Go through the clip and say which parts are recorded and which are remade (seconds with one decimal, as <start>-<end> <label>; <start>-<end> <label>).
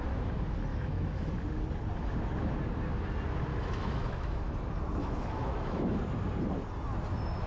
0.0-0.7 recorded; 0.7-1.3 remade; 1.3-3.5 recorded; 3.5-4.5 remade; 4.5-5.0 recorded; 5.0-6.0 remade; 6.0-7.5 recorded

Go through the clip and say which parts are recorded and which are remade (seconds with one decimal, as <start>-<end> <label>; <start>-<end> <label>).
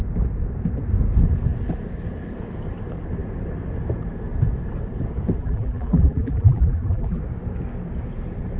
0.0-5.4 recorded; 5.4-7.2 remade; 7.2-8.6 recorded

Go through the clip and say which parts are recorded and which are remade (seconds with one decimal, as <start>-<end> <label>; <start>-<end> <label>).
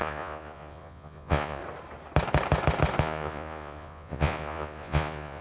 0.0-1.6 remade; 1.6-3.0 recorded; 3.0-5.4 remade